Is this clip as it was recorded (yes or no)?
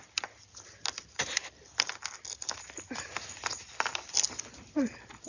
yes